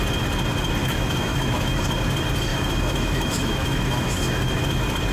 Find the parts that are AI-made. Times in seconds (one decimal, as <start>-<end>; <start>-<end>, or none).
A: 0.8-1.8; 2.5-4.6